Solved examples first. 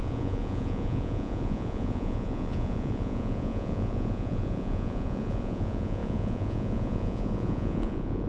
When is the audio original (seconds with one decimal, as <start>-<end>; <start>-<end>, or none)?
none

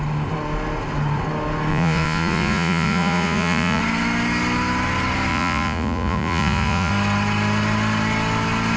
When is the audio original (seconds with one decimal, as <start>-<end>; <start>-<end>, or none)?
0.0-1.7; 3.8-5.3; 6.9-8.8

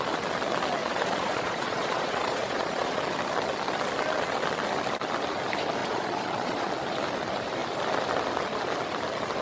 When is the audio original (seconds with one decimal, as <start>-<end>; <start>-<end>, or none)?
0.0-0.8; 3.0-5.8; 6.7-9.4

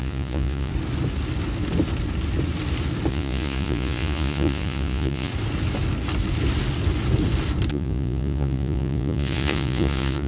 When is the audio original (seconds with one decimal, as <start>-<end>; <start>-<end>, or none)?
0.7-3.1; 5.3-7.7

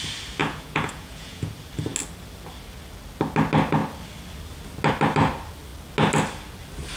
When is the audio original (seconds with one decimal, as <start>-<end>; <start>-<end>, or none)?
0.0-0.4; 1.5-7.0